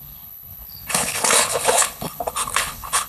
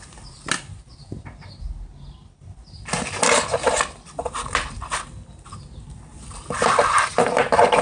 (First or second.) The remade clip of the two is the first